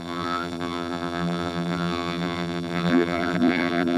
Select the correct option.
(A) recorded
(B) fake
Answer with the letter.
B